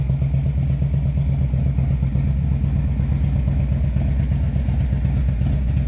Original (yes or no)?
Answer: yes